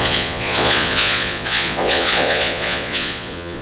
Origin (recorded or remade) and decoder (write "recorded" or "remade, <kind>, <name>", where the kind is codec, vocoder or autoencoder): remade, vocoder, Vocos